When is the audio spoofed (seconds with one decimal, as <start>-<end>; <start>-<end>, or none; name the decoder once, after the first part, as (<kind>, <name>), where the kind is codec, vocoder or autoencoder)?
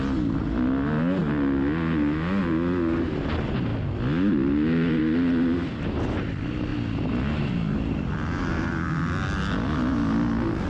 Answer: none